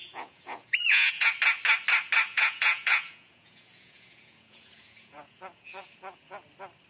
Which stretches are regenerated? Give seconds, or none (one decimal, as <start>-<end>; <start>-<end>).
0.0-1.3; 2.3-6.4